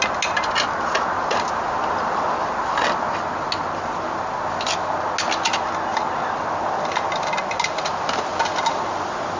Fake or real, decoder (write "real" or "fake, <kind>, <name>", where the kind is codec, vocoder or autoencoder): real